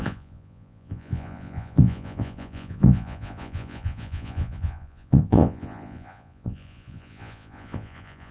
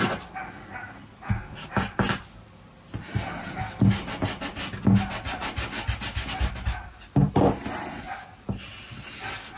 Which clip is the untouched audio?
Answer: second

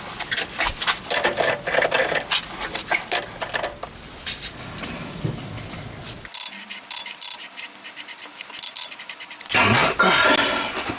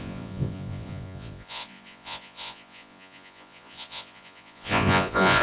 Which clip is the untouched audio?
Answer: first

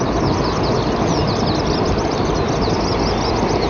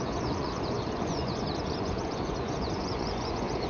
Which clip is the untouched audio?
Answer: first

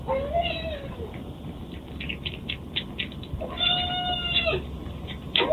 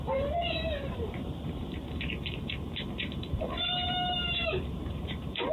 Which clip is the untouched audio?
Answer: first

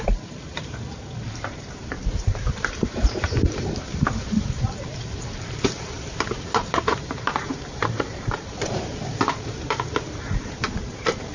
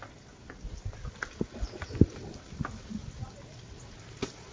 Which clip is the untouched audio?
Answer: second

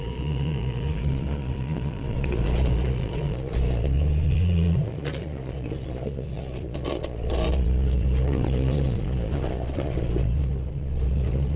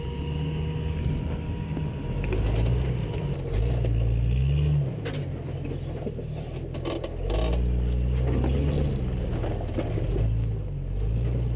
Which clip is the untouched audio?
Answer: second